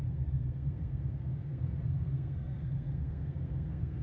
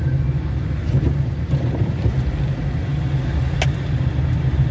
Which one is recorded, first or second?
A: second